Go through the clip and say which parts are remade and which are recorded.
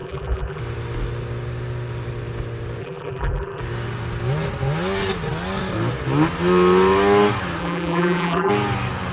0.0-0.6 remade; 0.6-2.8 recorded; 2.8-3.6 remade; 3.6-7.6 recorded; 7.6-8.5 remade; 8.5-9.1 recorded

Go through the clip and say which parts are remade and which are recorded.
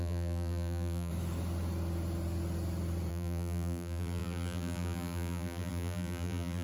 0.0-1.1 remade; 1.1-3.1 recorded; 3.1-6.6 remade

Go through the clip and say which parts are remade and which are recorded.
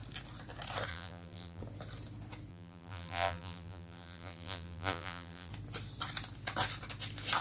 0.0-0.9 recorded; 0.9-1.6 remade; 1.6-2.5 recorded; 2.5-5.5 remade; 5.5-7.4 recorded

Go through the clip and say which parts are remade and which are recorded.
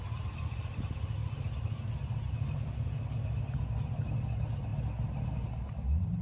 0.0-1.2 recorded; 1.2-1.9 remade; 1.9-6.2 recorded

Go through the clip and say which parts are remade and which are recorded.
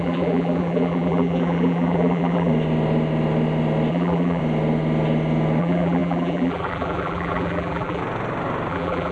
0.0-2.5 remade; 2.5-3.9 recorded; 3.9-4.4 remade; 4.4-5.6 recorded; 5.6-8.0 remade; 8.0-8.7 recorded; 8.7-9.1 remade